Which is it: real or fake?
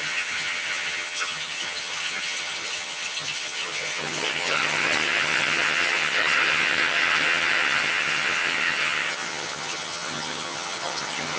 fake